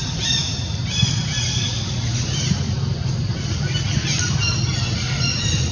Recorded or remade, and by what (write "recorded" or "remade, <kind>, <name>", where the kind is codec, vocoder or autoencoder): recorded